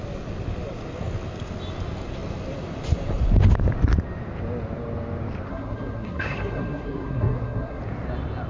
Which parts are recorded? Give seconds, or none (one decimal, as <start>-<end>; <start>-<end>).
0.0-5.5; 7.8-8.5

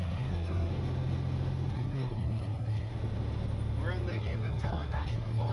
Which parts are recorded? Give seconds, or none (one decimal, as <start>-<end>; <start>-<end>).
0.7-1.7; 2.9-4.1

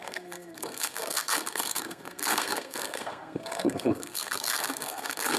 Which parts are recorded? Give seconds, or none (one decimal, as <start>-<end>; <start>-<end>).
none